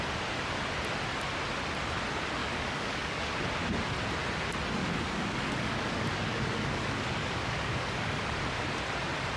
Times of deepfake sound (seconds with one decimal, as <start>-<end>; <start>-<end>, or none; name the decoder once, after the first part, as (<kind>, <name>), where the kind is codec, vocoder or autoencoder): 2.4-3.4 (codec, DAC); 4.8-8.2